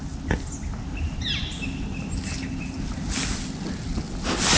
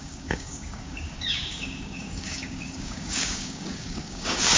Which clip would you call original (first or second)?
first